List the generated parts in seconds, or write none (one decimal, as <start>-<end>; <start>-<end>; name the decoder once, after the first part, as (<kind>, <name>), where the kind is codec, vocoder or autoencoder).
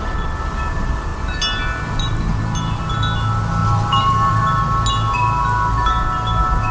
3.6-4.6 (vocoder, BigVGAN v2)